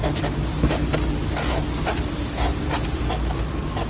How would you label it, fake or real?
real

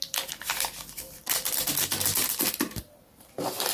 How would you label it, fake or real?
real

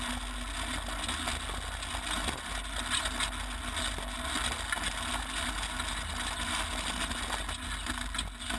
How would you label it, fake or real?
real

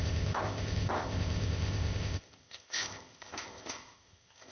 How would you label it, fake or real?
fake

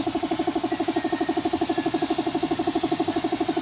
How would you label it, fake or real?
real